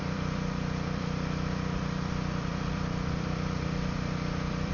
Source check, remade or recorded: remade